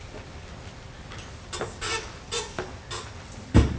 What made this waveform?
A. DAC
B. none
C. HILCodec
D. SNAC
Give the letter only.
B